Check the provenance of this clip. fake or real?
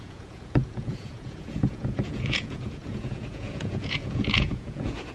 fake